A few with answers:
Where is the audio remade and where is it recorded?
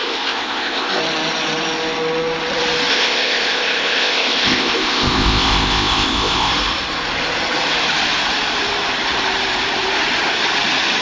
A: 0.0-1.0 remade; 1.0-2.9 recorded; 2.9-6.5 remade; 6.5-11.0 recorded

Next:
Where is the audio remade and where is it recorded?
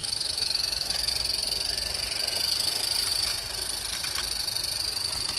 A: 0.0-1.1 remade; 1.1-5.4 recorded